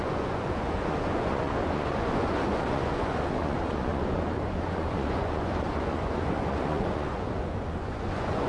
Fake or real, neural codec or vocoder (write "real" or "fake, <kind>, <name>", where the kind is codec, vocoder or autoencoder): fake, vocoder, Vocos